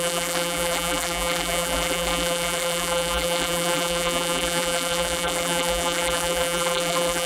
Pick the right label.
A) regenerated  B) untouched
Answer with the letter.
A